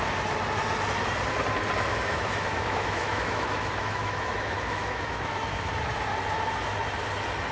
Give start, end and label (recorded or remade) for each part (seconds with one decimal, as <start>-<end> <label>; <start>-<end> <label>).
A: 0.0-1.9 recorded; 1.9-5.7 remade; 5.7-7.5 recorded